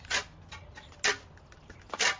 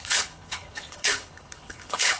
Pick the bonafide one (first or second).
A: first